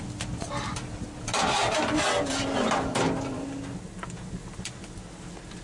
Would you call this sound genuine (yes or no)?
yes